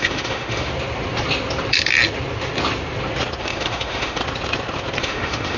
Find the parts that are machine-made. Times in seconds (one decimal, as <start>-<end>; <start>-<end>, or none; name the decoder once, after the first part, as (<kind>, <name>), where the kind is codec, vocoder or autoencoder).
0.0-0.7 (autoencoder, DAC-VAE); 3.4-4.2; 5.0-5.6

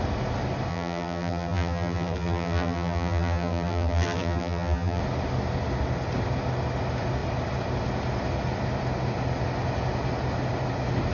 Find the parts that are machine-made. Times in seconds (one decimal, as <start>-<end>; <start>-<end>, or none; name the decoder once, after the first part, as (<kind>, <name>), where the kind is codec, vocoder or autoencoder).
0.7-5.0 (vocoder, BigVGAN v2)

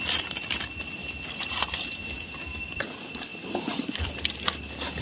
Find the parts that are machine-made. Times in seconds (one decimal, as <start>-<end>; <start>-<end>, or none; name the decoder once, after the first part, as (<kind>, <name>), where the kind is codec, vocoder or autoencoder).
none

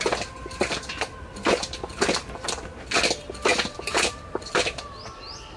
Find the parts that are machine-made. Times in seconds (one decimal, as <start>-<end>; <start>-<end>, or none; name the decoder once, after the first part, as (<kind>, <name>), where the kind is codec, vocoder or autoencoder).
none

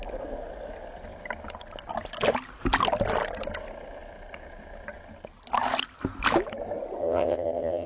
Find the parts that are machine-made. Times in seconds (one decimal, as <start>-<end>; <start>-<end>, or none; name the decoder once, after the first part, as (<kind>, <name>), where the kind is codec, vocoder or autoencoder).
7.0-7.9 (vocoder, HiFi-GAN)